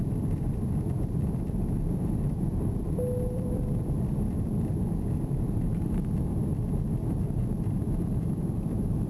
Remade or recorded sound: remade